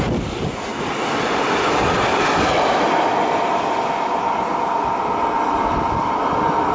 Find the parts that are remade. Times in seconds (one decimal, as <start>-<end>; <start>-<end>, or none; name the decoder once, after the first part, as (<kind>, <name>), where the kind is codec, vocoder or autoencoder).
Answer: none

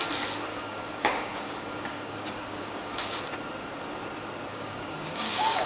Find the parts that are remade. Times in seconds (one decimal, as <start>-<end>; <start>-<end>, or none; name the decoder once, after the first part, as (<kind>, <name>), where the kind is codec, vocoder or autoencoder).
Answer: 0.5-3.2 (codec, DAC); 4.5-5.7